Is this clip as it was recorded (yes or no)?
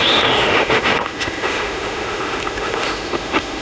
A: no